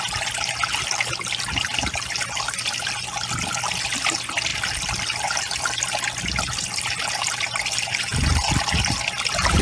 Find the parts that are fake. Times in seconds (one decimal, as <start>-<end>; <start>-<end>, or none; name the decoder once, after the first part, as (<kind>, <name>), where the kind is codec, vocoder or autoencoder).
4.5-5.7 (vocoder, BigVGAN v2)